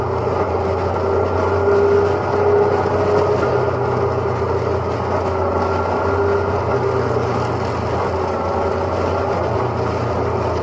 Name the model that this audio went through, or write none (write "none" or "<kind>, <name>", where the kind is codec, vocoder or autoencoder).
none